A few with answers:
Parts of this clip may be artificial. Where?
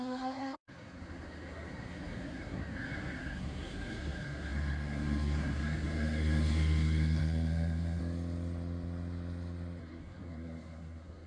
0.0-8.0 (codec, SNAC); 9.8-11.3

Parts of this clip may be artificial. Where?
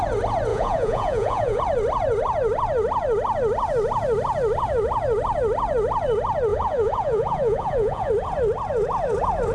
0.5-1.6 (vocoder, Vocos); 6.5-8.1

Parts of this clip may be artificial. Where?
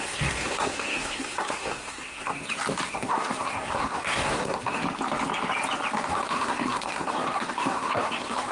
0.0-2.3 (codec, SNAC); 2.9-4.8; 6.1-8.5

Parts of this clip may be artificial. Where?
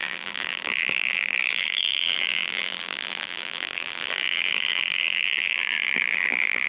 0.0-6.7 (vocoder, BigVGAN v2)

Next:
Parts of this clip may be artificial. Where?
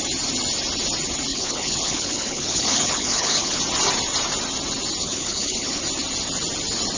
1.3-3.6 (codec, HILCodec); 5.0-5.8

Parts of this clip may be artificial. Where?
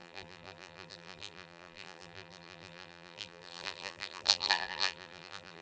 0.0-5.6 (vocoder, BigVGAN v2)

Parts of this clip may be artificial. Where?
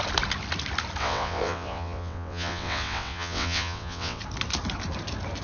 1.0-4.2 (vocoder, WaveNeXt)